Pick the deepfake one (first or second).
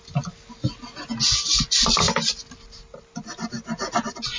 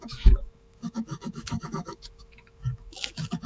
second